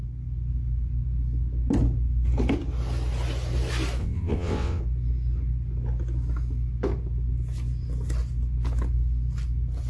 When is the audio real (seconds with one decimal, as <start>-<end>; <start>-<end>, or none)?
0.0-4.0; 4.8-9.9